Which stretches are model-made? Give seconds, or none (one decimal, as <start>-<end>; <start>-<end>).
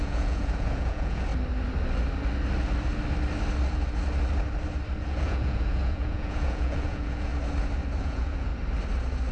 0.0-1.3; 5.0-7.3; 8.0-8.5